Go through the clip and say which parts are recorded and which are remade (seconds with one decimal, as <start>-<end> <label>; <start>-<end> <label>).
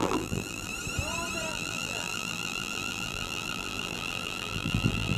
0.0-0.7 remade; 0.7-1.5 recorded; 1.5-5.2 remade